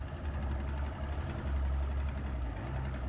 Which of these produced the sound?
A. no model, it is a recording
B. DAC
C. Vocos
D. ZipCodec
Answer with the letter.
A